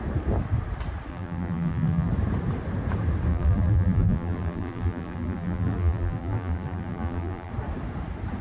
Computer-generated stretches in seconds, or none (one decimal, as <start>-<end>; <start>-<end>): 1.1-2.1; 3.3-7.5